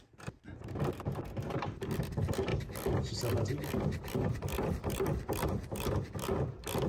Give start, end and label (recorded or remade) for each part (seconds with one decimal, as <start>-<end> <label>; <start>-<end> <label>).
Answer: 0.0-6.9 recorded